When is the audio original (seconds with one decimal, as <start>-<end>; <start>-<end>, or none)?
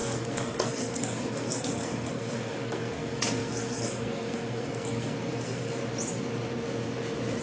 5.8-7.4